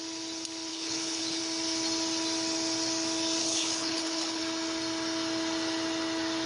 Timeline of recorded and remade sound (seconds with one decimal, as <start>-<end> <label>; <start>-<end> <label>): 0.0-0.7 recorded; 0.7-1.4 remade; 1.4-3.4 recorded; 3.4-4.4 remade; 4.4-6.5 recorded